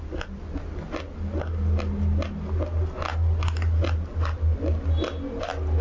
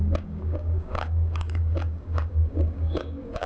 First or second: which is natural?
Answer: first